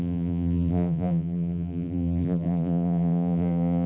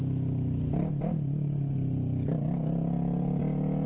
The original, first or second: second